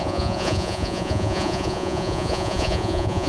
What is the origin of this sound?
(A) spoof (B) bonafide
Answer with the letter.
A